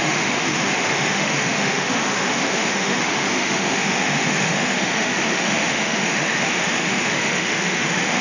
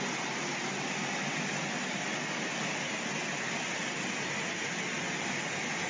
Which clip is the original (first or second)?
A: second